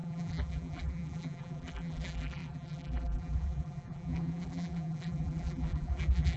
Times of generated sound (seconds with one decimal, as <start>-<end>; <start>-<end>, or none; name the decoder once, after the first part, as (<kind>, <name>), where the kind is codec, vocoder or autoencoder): 0.0-6.4 (vocoder, BigVGAN v2)